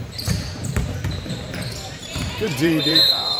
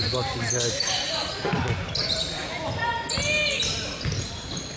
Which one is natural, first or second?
second